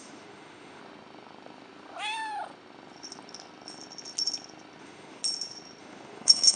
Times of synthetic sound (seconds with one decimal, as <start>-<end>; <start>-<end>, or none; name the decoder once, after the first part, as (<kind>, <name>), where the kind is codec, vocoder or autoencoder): 0.0-0.8 (autoencoder, DAC-VAE); 4.8-5.2; 5.8-6.6